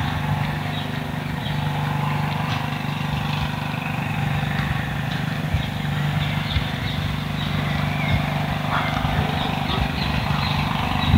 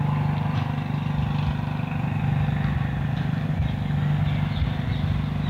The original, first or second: second